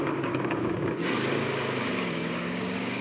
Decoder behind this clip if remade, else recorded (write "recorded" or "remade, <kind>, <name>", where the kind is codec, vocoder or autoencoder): remade, codec, DAC